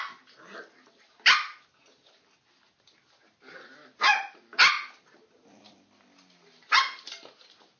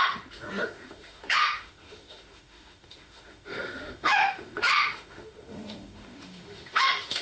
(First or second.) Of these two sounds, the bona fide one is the first